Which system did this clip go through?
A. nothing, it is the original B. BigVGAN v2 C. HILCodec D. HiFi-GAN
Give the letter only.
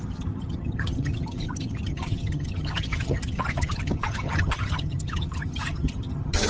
D